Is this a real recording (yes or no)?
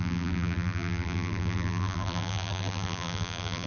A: no